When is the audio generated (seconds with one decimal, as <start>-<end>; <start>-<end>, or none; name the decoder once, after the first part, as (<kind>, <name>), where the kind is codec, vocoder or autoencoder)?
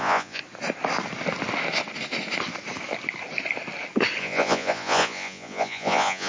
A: 0.0-0.4 (vocoder, Vocos); 4.2-6.3